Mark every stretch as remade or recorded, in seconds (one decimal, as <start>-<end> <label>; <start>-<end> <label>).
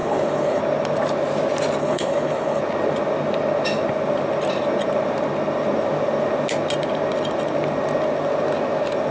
0.0-0.6 remade; 0.6-1.8 recorded; 1.8-2.6 remade; 2.6-9.1 recorded